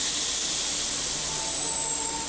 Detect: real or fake real